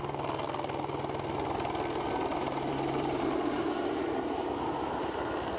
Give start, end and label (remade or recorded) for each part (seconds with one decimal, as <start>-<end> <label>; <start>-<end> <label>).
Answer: 0.0-2.3 recorded; 2.3-5.0 remade; 5.0-5.6 recorded